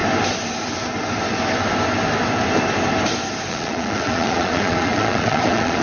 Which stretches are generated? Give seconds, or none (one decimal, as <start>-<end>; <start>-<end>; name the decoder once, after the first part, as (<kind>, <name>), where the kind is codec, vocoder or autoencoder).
3.5-5.8 (vocoder, Vocos)